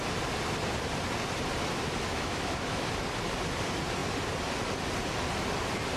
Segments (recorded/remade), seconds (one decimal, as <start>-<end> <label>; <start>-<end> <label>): 0.0-2.1 recorded; 2.1-2.9 remade; 2.9-6.0 recorded